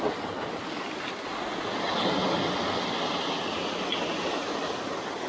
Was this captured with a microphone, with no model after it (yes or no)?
yes